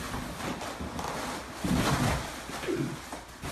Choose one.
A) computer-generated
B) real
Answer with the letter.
B